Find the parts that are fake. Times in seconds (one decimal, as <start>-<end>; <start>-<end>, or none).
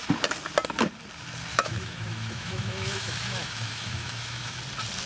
1.5-4.6